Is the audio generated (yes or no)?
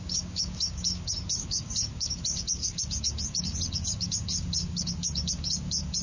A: yes